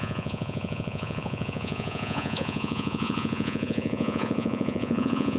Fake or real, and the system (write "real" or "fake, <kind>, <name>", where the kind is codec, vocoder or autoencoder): fake, vocoder, Vocos